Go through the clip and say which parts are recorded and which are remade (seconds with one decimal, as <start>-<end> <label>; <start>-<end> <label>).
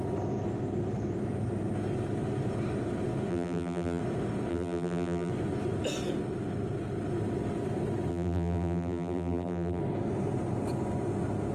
0.0-3.3 recorded; 3.3-4.0 remade; 4.0-4.5 recorded; 4.5-5.3 remade; 5.3-8.1 recorded; 8.1-9.8 remade; 9.8-11.5 recorded